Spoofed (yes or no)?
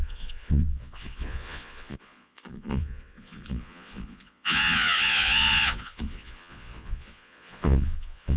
yes